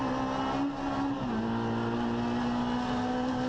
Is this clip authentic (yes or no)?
yes